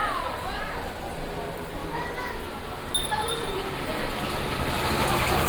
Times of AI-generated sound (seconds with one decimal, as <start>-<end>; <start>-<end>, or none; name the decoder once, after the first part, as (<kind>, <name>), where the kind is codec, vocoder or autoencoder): 0.0-0.6 (vocoder, Vocos)